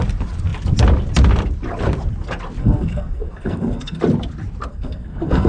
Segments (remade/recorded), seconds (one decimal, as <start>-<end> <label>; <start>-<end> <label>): 0.0-2.6 recorded; 2.6-4.0 remade; 4.0-4.7 recorded; 4.7-5.5 remade